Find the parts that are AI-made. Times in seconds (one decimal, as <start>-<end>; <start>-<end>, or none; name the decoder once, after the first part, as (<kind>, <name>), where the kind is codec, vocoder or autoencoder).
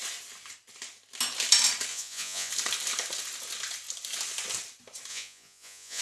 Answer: 1.9-2.5 (vocoder, Vocos); 5.1-6.0